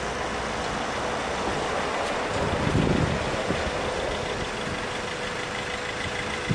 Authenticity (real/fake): real